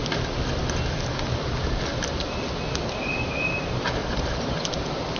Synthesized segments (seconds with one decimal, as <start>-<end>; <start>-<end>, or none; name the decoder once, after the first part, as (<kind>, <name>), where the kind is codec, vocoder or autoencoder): 4.0-4.7 (vocoder, BigVGAN v2)